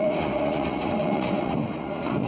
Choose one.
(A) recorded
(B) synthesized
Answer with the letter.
B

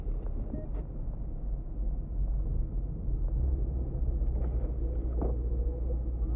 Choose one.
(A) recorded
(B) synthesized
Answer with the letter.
A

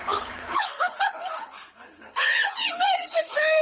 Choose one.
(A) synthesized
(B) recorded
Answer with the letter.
A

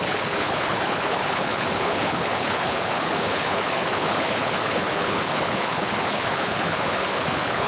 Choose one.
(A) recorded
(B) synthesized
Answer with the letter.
B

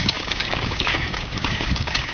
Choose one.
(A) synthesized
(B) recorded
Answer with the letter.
A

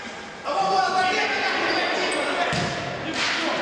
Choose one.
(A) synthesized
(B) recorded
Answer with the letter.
B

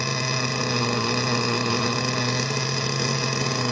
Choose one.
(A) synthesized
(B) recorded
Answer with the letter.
B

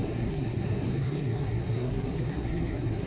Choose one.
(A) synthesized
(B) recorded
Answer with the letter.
A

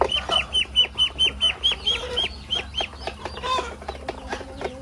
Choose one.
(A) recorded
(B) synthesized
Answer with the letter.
A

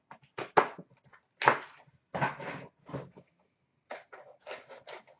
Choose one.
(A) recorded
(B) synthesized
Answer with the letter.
A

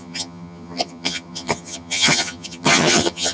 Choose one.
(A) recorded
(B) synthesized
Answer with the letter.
B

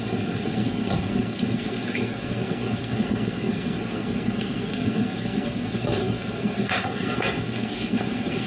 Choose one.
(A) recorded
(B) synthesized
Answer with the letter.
B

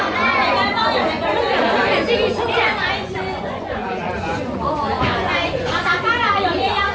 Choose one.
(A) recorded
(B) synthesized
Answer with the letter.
B